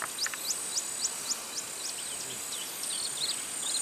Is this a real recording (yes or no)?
yes